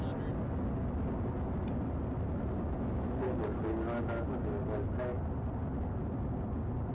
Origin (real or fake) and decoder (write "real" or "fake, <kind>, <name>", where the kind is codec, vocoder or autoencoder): real